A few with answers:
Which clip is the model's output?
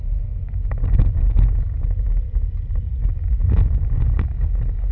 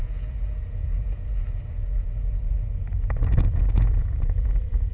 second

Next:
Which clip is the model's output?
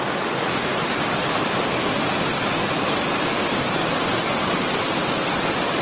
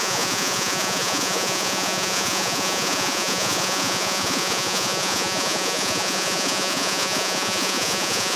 second